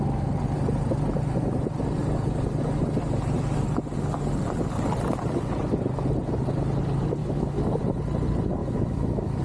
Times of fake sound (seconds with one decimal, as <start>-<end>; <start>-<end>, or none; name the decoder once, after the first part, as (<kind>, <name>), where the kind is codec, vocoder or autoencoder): 7.2-7.8 (autoencoder, DAC-VAE); 8.6-9.4